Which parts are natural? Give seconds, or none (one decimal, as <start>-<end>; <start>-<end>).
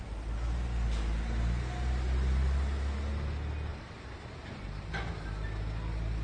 0.0-6.2